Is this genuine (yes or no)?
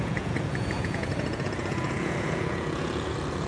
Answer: no